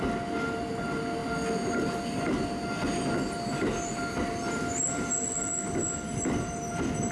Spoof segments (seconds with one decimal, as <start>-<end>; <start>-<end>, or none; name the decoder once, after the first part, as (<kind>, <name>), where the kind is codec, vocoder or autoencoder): none